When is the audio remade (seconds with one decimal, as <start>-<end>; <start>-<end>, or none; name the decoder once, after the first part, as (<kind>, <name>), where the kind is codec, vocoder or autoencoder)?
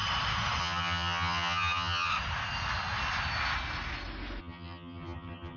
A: 0.6-2.1 (vocoder, HiFi-GAN); 4.4-5.6